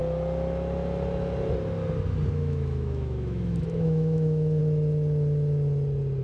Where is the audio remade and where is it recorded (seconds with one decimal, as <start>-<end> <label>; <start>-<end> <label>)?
0.0-2.3 recorded; 2.3-4.6 remade; 4.6-6.2 recorded